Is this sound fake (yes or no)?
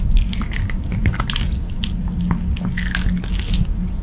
no